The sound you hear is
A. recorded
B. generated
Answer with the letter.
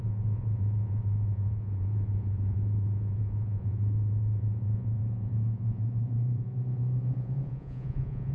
B